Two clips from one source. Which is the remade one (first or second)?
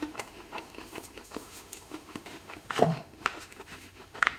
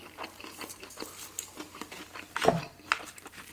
first